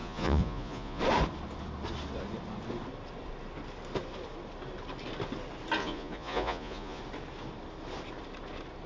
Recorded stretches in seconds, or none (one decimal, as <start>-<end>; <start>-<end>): 1.0-5.8; 7.0-8.9